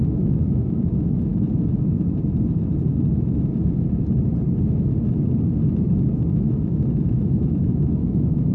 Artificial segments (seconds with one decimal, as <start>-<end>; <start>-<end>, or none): 0.0-1.3; 5.9-8.5